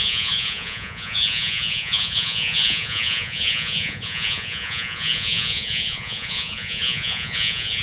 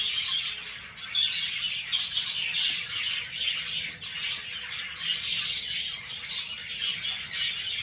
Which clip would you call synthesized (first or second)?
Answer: first